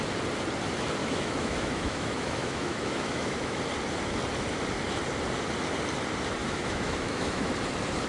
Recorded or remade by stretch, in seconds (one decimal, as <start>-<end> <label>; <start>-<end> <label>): 0.0-1.0 recorded; 1.0-3.6 remade; 3.6-6.4 recorded; 6.4-7.5 remade; 7.5-8.1 recorded